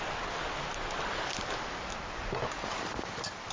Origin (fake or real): real